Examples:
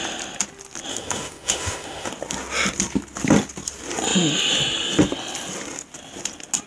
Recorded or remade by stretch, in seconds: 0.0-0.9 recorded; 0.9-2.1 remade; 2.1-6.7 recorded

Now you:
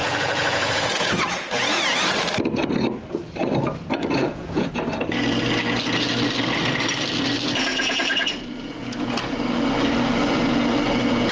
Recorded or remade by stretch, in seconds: 0.0-1.8 remade; 1.8-4.2 recorded; 4.2-4.8 remade; 4.8-7.7 recorded; 7.7-9.1 remade; 9.1-11.3 recorded

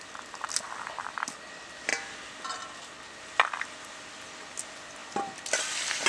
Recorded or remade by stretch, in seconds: 0.0-6.1 recorded

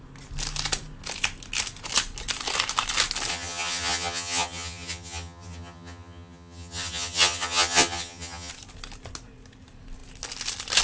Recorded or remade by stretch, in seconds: 0.0-3.3 recorded; 3.3-8.5 remade; 8.5-10.8 recorded

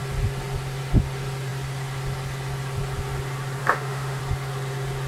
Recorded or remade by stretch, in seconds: 0.0-3.6 recorded; 3.6-4.2 remade; 4.2-5.1 recorded

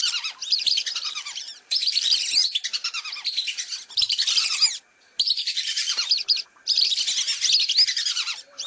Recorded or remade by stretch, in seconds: 0.0-2.8 remade; 2.8-3.9 recorded; 3.9-6.9 remade; 6.9-8.0 recorded; 8.0-8.7 remade

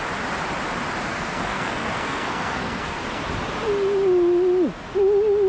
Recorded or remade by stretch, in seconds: 0.0-1.1 recorded; 1.1-3.2 remade; 3.2-5.5 recorded

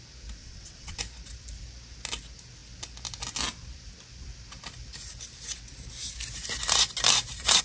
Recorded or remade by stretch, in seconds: 0.0-0.4 recorded; 0.4-1.0 remade; 1.0-7.6 recorded